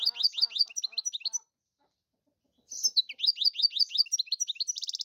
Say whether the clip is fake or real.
real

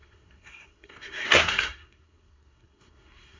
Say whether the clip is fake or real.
fake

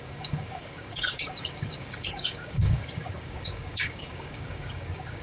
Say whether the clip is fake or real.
fake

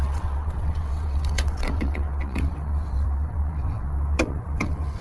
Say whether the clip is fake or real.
fake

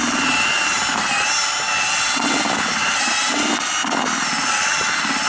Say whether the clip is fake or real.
real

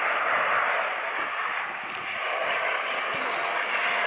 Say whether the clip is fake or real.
real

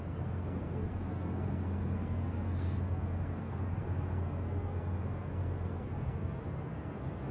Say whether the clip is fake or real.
fake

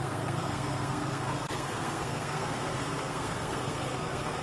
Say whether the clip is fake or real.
fake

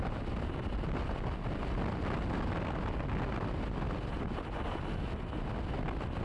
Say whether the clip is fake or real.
real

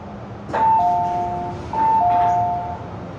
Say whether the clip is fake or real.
real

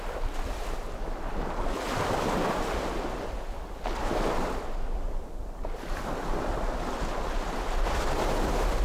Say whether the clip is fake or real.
real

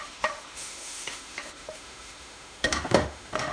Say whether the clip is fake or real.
fake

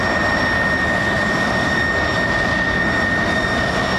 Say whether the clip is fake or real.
real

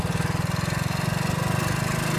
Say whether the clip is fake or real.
real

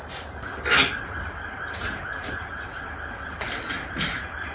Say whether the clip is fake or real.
real